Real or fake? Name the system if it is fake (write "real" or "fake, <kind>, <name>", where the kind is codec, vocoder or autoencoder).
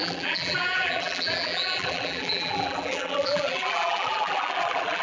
fake, vocoder, BigVGAN v2